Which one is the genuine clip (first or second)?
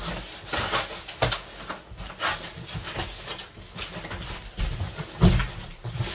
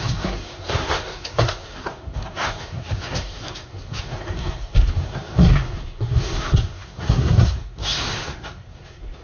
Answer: first